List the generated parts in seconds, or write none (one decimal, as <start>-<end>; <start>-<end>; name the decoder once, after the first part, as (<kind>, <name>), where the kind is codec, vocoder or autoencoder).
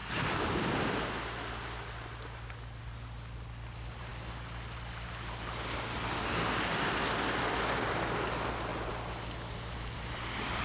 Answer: 2.8-4.1 (vocoder, BigVGAN v2); 6.7-8.7; 10.1-10.6